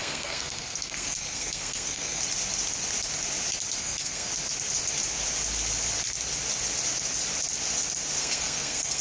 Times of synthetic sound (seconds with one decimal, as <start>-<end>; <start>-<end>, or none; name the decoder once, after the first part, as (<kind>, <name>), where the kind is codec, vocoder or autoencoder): 0.0-2.2 (codec, SNAC); 3.8-4.3; 8.2-9.0